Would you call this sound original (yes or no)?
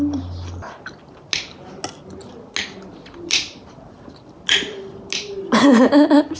yes